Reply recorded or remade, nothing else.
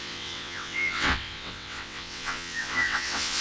remade